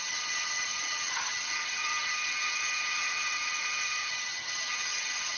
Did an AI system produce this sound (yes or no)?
yes